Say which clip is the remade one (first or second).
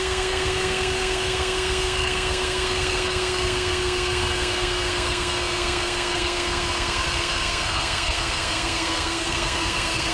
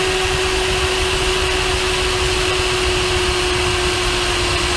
first